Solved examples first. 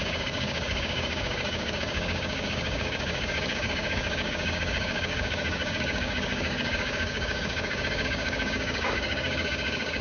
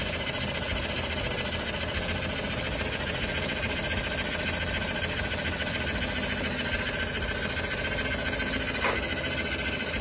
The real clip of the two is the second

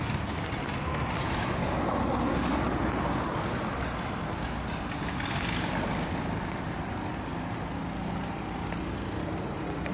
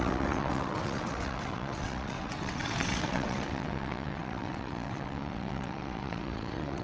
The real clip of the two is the first